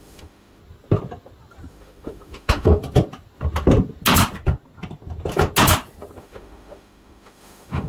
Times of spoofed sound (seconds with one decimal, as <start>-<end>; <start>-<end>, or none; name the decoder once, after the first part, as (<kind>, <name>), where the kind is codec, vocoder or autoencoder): 0.0-0.6 (autoencoder, DAC-VAE); 1.7-2.8; 6.2-7.9